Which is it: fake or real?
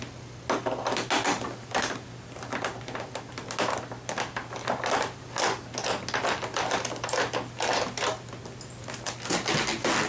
real